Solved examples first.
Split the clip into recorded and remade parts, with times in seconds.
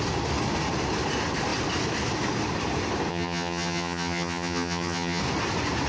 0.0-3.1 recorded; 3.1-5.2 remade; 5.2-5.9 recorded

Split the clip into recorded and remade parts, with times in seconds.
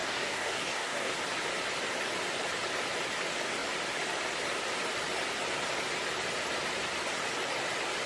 0.0-1.1 remade; 1.1-8.1 recorded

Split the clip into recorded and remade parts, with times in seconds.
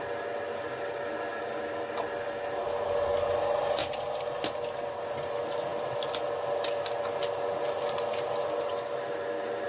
0.0-9.7 recorded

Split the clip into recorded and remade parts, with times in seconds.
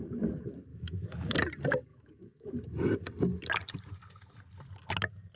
0.0-0.7 recorded; 0.7-1.3 remade; 1.3-1.9 recorded; 1.9-2.6 remade; 2.6-5.4 recorded